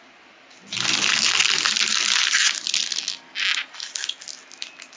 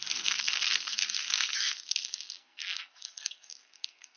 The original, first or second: first